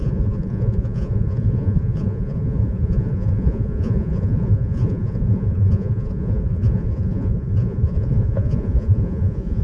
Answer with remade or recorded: remade